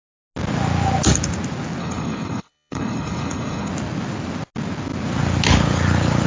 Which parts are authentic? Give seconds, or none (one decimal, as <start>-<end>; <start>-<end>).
0.0-1.8; 3.7-6.3